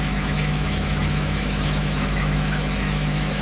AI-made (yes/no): yes